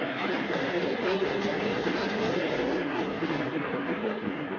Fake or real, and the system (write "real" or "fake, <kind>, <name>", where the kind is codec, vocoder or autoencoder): fake, codec, SNAC